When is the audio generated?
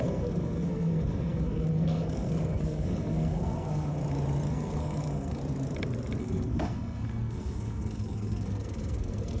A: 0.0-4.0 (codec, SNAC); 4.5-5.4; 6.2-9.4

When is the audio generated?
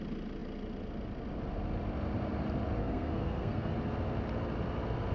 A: 2.8-3.7 (codec, SNAC)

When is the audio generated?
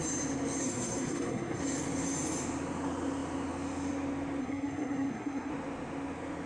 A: 0.6-1.6 (codec, SNAC); 4.4-5.5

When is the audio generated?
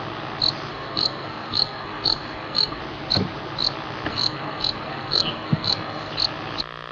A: 0.7-2.8 (codec, SNAC); 4.1-6.1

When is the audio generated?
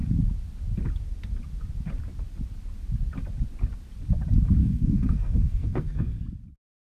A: 4.6-6.2 (codec, SNAC)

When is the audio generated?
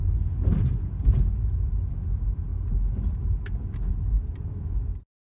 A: none